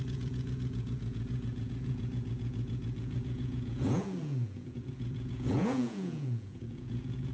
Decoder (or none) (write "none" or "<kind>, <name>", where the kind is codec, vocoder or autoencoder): vocoder, Vocos